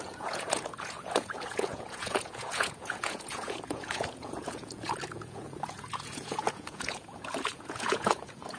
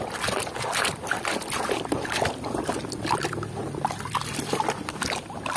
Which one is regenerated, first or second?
first